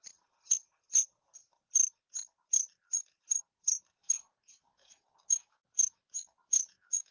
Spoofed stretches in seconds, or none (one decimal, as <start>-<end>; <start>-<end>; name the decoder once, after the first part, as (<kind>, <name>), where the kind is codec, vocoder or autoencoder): 4.0-7.1 (autoencoder, DAC-VAE)